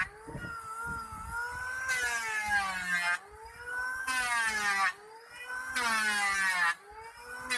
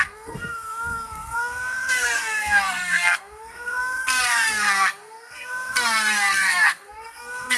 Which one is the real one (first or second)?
first